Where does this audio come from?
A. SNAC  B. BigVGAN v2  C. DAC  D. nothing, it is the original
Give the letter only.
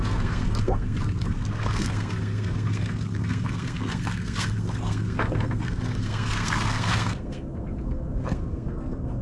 A